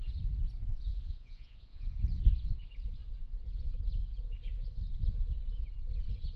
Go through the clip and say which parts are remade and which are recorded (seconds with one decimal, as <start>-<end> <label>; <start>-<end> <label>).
0.0-0.9 recorded; 0.9-2.0 remade; 2.0-6.4 recorded